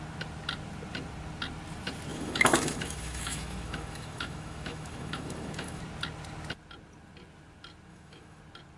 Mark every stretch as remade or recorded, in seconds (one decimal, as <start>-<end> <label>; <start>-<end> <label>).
0.0-2.1 recorded; 2.1-5.8 remade; 5.8-7.9 recorded; 7.9-8.4 remade; 8.4-8.8 recorded